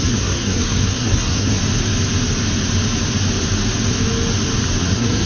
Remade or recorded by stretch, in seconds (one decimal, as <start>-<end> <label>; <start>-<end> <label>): 0.0-1.6 remade; 1.6-4.8 recorded; 4.8-5.3 remade